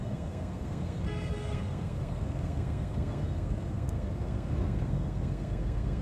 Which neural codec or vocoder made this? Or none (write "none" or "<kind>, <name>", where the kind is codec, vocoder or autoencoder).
codec, SNAC